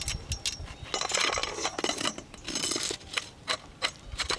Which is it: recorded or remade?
recorded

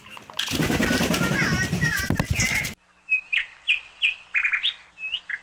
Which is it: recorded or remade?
recorded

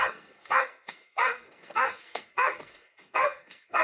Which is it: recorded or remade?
remade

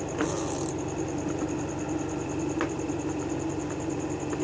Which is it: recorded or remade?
recorded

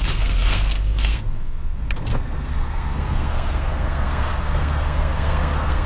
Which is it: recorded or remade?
remade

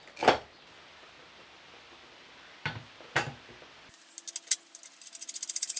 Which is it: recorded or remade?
recorded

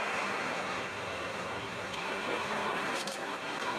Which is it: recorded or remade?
remade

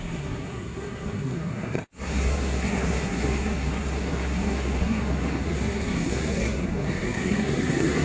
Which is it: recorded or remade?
remade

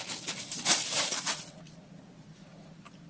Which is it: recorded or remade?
recorded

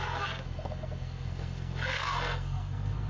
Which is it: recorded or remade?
remade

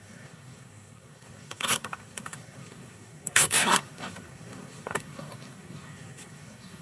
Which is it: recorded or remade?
remade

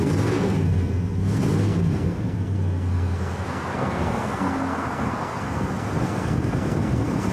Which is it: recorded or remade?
remade